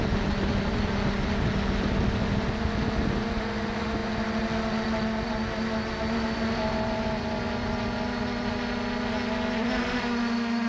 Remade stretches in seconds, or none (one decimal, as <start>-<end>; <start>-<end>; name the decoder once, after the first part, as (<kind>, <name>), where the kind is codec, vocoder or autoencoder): none